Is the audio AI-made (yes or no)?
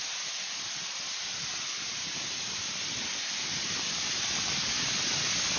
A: no